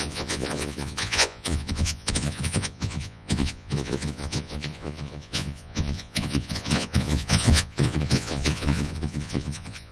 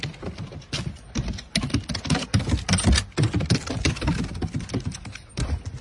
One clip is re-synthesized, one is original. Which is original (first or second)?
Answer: second